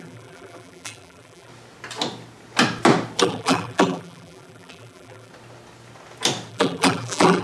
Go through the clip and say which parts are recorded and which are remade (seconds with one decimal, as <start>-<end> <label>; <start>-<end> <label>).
0.0-1.5 remade; 1.5-3.2 recorded; 3.2-5.3 remade; 5.3-6.5 recorded; 6.5-7.4 remade